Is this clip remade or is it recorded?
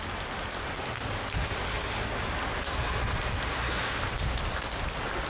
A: recorded